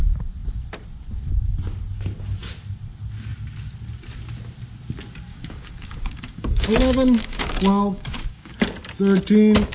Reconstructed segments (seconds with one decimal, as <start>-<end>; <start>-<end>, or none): 5.3-8.5